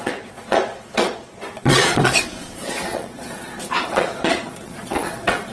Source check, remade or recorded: remade